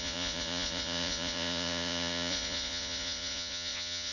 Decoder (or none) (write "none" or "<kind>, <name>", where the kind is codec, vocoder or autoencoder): vocoder, Vocos